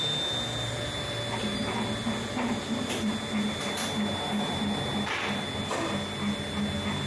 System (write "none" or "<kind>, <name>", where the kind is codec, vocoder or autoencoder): none